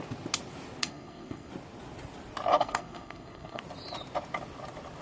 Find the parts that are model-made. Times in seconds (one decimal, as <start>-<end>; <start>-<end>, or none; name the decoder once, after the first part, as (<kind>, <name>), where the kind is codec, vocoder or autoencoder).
0.8-1.5 (codec, SNAC); 2.5-3.6